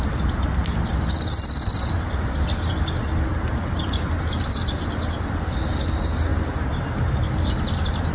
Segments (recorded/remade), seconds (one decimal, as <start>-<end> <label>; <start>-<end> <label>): 0.0-1.7 recorded; 1.7-2.4 remade; 2.4-8.1 recorded

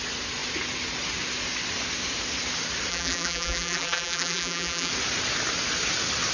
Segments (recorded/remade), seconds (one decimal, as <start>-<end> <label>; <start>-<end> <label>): 0.0-2.9 recorded; 2.9-4.9 remade; 4.9-6.3 recorded

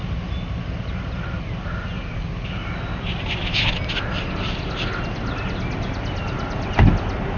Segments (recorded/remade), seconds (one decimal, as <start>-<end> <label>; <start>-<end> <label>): 0.0-7.4 recorded

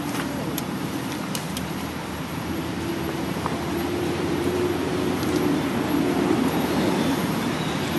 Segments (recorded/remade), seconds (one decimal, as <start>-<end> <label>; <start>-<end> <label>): 0.0-4.9 remade; 4.9-6.3 recorded; 6.3-8.0 remade

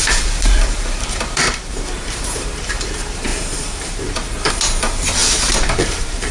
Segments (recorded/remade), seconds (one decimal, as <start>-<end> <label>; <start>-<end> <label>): 0.0-5.2 remade; 5.2-5.7 recorded; 5.7-6.3 remade

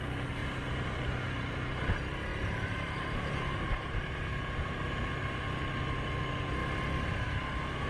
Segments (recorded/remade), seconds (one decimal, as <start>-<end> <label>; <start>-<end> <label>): 0.0-0.4 recorded; 0.4-1.8 remade; 1.8-2.3 recorded; 2.3-4.0 remade; 4.0-7.9 recorded

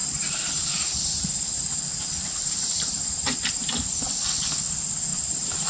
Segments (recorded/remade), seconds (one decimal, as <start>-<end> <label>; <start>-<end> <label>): 0.0-1.8 remade; 1.8-5.1 recorded; 5.1-5.7 remade

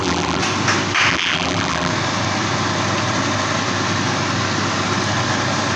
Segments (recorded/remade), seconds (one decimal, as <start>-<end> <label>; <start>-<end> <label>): 0.0-0.4 remade; 0.4-1.1 recorded; 1.1-1.9 remade; 1.9-5.8 recorded